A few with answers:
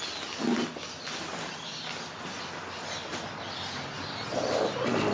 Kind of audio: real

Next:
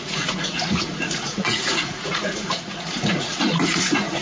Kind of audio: fake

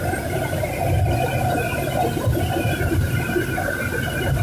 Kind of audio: real